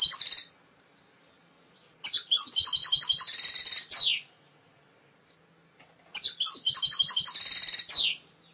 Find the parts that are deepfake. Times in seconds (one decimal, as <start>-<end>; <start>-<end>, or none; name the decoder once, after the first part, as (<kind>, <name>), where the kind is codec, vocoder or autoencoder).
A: none